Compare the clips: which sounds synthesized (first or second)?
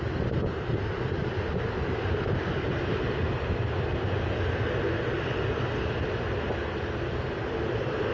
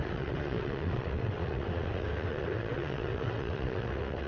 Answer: second